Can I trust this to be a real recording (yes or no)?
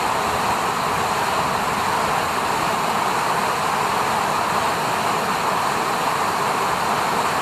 yes